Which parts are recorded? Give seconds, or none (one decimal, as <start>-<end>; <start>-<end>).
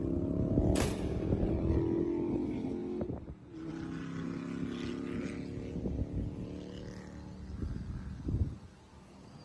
0.0-9.4